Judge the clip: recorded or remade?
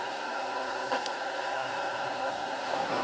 remade